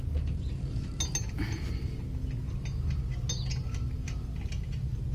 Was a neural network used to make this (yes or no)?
no